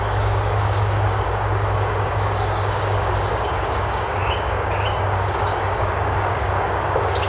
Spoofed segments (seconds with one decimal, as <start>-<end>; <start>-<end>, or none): 0.0-7.3